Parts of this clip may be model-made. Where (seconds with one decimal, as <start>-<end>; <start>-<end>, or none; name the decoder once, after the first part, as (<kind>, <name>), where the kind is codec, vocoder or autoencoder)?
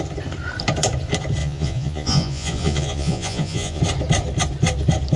1.4-3.8 (vocoder, Vocos)